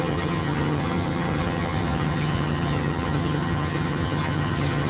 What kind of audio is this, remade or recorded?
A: remade